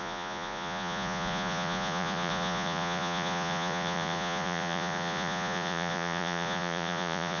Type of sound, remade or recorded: remade